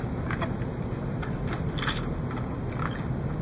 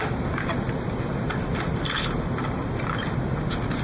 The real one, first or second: first